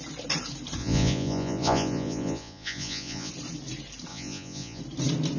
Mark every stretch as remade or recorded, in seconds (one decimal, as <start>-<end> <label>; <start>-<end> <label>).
0.0-0.8 recorded; 0.8-3.3 remade; 3.3-4.1 recorded; 4.1-4.8 remade; 4.8-5.4 recorded